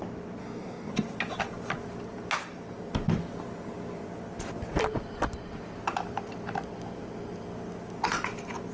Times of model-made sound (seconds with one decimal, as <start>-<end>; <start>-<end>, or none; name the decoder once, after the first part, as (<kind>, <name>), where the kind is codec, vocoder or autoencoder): 0.4-0.9 (codec, DAC)